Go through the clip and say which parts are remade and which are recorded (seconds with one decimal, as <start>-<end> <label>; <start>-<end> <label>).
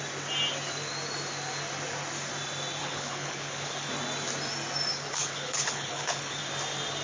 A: 0.0-2.8 recorded; 2.8-3.9 remade; 3.9-4.9 recorded; 4.9-6.4 remade; 6.4-7.0 recorded